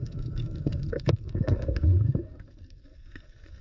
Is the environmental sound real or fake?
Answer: fake